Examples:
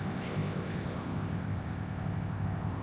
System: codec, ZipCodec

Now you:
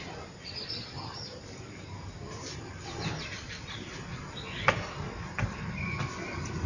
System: none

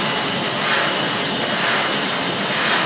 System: none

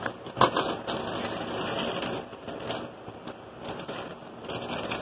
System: none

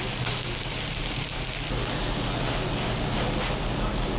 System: none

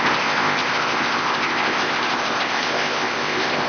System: codec, ZipCodec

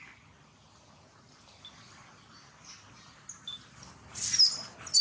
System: none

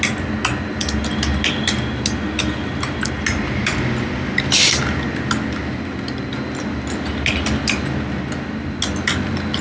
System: none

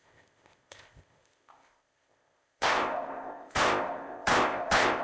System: codec, ZipCodec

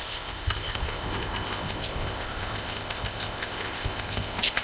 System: codec, ZipCodec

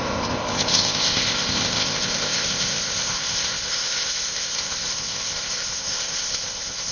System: codec, ZipCodec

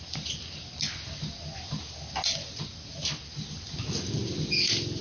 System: none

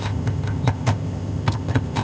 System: codec, ZipCodec